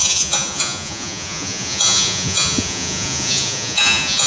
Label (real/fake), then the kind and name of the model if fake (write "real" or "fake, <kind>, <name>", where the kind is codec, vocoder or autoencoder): fake, vocoder, Vocos